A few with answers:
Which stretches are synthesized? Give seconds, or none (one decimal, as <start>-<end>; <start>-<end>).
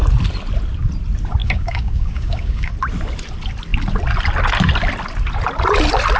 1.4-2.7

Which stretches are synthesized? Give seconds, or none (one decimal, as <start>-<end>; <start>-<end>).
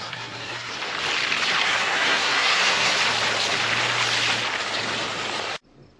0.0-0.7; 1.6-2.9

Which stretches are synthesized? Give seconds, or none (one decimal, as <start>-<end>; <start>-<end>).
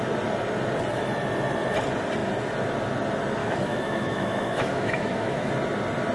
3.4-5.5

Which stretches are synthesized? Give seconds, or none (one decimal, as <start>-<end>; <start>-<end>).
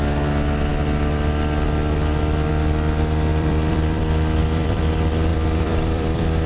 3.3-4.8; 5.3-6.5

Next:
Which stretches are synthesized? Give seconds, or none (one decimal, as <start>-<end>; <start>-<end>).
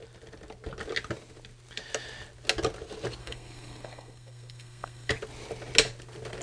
3.2-5.1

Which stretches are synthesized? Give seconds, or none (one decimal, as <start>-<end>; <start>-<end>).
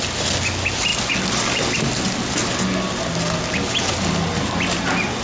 none